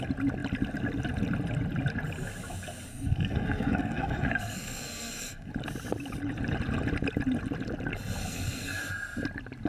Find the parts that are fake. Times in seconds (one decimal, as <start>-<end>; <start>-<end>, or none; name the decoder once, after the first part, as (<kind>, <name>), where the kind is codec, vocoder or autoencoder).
2.9-5.5 (codec, SNAC); 8.2-8.8